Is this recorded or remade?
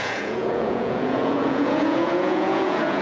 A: remade